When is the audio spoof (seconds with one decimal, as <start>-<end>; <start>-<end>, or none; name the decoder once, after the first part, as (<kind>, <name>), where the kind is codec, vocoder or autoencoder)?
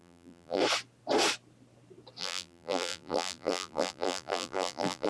0.0-0.6 (vocoder, BigVGAN v2); 2.2-5.1